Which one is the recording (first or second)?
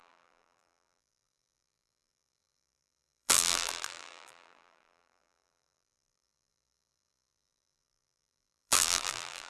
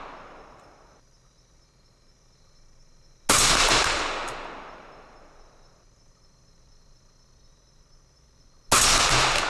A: second